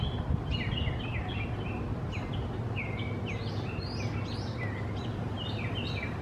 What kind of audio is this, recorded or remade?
recorded